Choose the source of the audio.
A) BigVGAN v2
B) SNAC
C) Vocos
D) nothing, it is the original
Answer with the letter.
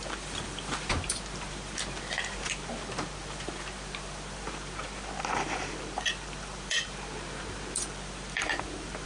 A